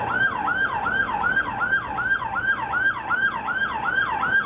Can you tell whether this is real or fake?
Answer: real